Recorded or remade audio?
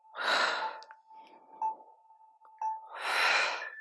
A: recorded